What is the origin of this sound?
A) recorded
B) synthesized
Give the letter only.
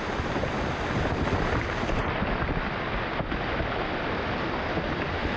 A